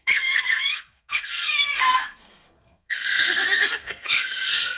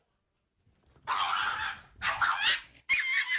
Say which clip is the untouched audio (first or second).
second